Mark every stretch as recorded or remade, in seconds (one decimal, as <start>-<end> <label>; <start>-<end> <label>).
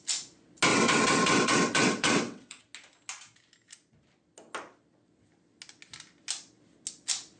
0.0-0.7 recorded; 0.7-2.6 remade; 2.6-7.4 recorded